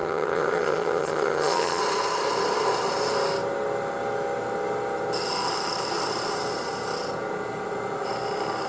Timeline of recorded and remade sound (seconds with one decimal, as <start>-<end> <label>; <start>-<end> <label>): 0.0-1.8 remade; 1.8-8.7 recorded